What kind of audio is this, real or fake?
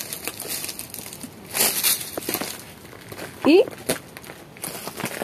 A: real